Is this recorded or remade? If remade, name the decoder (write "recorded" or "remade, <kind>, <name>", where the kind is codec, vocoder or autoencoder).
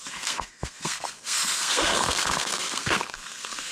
remade, codec, SNAC